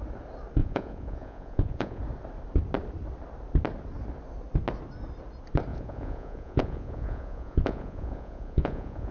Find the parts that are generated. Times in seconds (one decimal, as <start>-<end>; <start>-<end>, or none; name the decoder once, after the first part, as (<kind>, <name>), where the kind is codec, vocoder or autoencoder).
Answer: 0.6-2.0 (vocoder, Vocos); 5.7-9.1